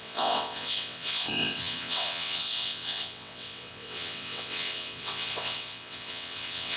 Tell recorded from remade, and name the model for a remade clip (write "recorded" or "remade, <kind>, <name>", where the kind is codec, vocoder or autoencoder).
remade, vocoder, WaveNeXt